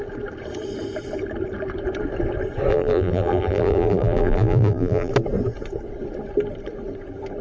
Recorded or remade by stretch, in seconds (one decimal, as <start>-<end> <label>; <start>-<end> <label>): 0.0-2.7 recorded; 2.7-5.1 remade; 5.1-7.4 recorded